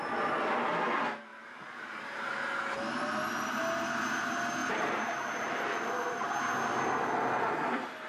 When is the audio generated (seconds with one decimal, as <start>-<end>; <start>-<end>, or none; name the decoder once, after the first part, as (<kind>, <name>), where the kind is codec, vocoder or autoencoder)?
1.3-2.3 (vocoder, BigVGAN v2); 4.6-6.3